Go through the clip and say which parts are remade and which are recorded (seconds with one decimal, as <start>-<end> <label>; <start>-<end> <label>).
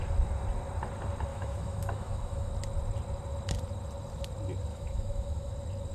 0.0-1.3 recorded; 1.3-2.5 remade; 2.5-4.7 recorded; 4.7-5.5 remade; 5.5-5.9 recorded